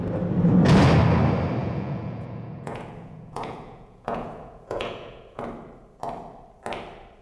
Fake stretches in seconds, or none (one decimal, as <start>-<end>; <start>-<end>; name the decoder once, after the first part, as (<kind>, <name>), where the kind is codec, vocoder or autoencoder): 1.6-5.4 (vocoder, Vocos)